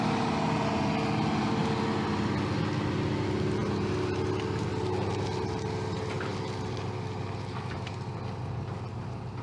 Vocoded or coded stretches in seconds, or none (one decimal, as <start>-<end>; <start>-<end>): none